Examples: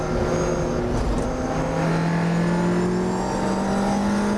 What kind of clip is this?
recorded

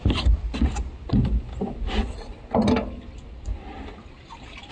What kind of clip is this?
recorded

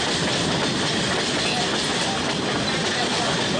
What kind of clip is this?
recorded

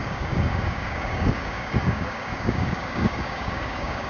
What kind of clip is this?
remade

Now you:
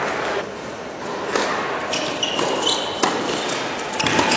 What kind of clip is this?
recorded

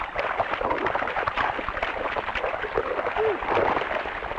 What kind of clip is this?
recorded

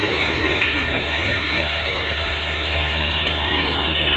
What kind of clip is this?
remade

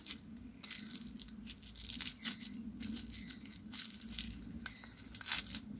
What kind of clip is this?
recorded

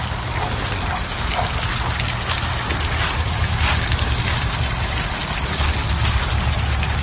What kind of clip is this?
recorded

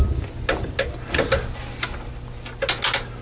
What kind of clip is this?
recorded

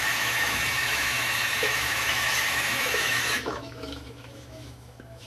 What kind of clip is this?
remade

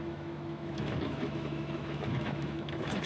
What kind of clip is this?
remade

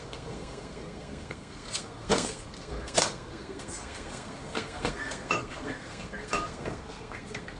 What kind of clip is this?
remade